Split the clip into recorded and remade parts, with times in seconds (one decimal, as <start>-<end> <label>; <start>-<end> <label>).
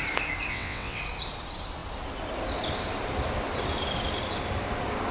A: 0.0-0.5 recorded; 0.5-1.0 remade; 1.0-5.1 recorded